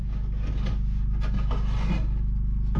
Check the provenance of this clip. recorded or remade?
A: recorded